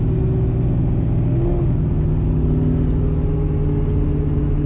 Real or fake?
real